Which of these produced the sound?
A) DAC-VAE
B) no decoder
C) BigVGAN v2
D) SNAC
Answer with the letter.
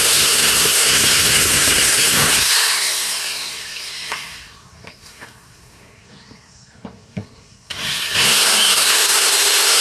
D